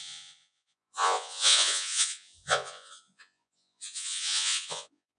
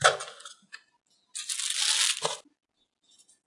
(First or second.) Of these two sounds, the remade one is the first